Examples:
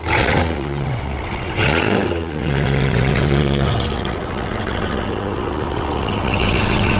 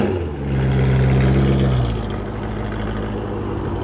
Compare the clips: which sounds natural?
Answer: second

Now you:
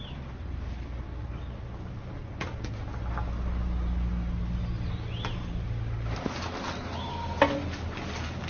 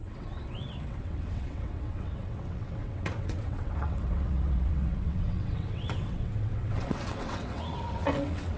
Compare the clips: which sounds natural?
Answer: first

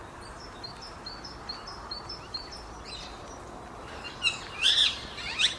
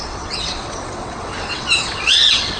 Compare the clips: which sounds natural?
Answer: first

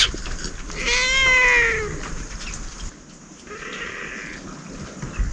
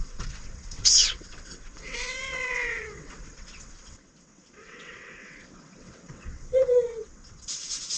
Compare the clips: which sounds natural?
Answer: first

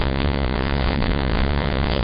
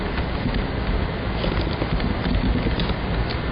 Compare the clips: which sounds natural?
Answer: second